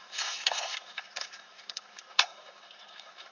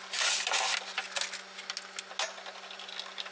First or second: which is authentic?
second